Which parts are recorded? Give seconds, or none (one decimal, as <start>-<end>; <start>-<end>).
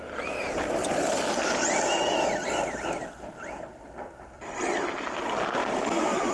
0.8-3.6